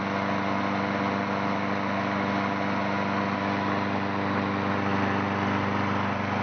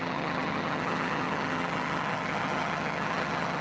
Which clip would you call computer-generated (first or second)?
second